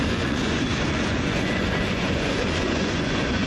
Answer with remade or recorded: remade